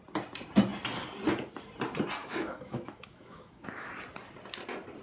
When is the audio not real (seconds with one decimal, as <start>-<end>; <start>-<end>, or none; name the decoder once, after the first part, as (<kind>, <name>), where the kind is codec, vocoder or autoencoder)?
2.2-3.9 (autoencoder, DAC-VAE)